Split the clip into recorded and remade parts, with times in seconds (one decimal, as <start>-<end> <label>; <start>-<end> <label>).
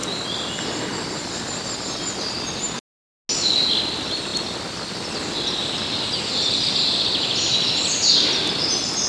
0.0-9.1 recorded